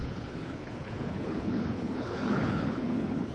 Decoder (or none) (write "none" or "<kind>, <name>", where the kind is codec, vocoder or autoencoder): codec, HILCodec